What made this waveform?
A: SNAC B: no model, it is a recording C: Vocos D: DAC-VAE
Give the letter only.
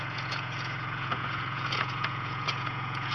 C